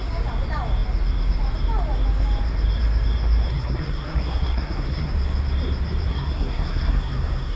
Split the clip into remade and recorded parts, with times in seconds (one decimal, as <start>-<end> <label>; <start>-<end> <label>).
0.0-3.5 recorded; 3.5-5.1 remade; 5.1-6.1 recorded; 6.1-7.6 remade